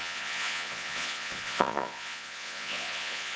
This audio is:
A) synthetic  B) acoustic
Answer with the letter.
A